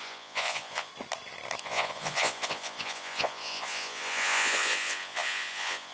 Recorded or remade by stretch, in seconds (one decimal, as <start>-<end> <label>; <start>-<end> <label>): 0.0-0.9 remade; 0.9-1.6 recorded; 1.6-5.9 remade